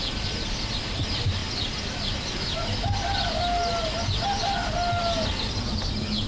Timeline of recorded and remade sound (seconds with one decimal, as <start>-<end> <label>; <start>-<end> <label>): 0.0-6.3 recorded